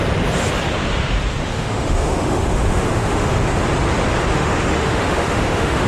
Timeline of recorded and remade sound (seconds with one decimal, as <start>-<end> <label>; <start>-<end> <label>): 0.0-1.4 recorded; 1.4-3.5 remade; 3.5-4.3 recorded; 4.3-5.9 remade